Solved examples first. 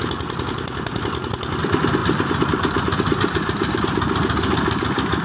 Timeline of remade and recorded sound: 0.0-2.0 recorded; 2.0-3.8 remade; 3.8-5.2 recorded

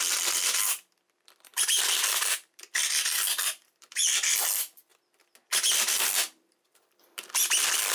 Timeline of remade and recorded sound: 0.0-4.9 remade; 4.9-5.7 recorded; 5.7-7.9 remade

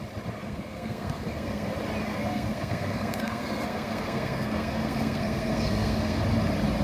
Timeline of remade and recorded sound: 0.0-0.4 recorded; 0.4-1.7 remade; 1.7-2.1 recorded; 2.1-6.2 remade; 6.2-6.8 recorded

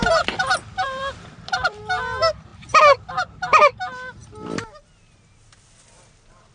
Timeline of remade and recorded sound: 0.0-1.8 remade; 1.8-6.5 recorded

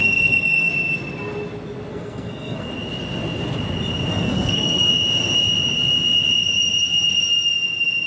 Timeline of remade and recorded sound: 0.0-0.7 remade; 0.7-1.9 recorded; 1.9-2.7 remade; 2.7-4.1 recorded; 4.1-4.9 remade; 4.9-8.1 recorded

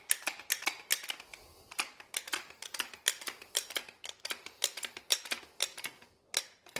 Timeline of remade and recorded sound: 0.0-1.5 recorded; 1.5-5.4 remade; 5.4-6.8 recorded

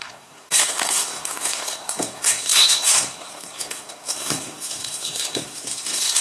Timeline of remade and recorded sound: 0.0-6.2 remade